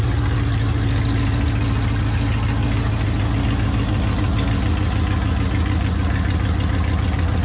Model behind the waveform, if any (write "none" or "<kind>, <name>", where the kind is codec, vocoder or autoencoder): none